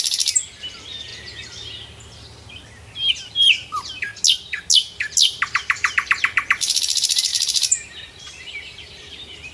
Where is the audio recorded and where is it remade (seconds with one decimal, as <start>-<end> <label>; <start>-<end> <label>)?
0.0-1.1 remade; 1.1-3.1 recorded; 3.1-4.1 remade; 4.1-5.5 recorded; 5.5-9.5 remade